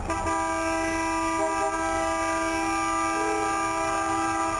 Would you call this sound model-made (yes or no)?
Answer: no